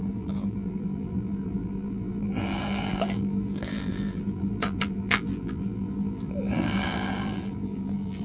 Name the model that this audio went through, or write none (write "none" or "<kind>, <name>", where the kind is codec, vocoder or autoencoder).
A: vocoder, BigVGAN v2